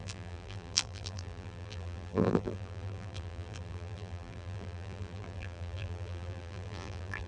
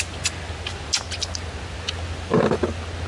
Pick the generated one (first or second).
first